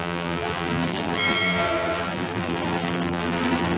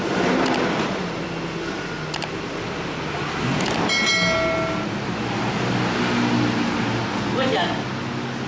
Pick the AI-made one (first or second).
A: first